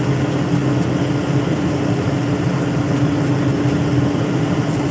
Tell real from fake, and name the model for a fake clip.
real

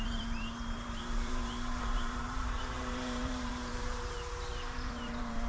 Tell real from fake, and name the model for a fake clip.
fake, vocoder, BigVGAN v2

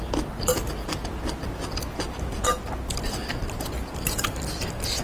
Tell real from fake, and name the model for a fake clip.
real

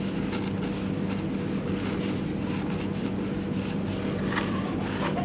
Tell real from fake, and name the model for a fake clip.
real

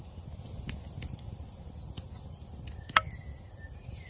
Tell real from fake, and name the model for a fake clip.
real